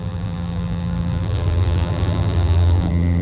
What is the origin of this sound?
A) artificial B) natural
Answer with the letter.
A